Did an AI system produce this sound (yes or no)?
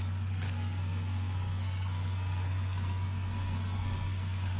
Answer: yes